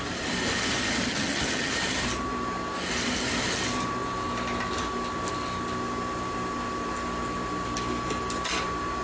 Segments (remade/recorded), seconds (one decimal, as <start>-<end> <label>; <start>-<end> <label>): 0.0-1.1 recorded; 1.1-1.7 remade; 1.7-9.0 recorded

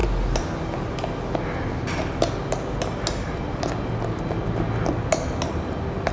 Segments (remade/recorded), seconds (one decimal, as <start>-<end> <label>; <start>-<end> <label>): 0.0-6.1 recorded

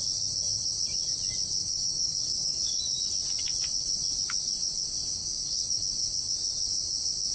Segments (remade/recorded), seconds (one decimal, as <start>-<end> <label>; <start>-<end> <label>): 0.0-1.6 recorded; 1.6-3.0 remade; 3.0-5.2 recorded; 5.2-5.8 remade; 5.8-7.3 recorded

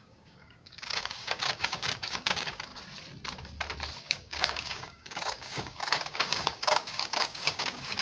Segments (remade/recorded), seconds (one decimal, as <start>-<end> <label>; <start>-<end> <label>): 0.0-2.7 remade; 2.7-4.0 recorded; 4.0-8.0 remade